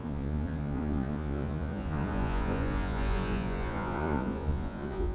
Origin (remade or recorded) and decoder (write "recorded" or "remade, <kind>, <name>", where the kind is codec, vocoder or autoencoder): remade, vocoder, Vocos